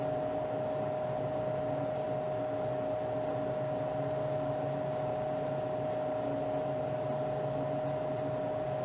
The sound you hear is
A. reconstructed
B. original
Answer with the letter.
B